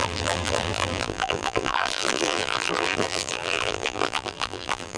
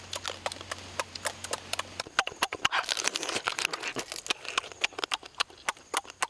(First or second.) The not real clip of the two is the first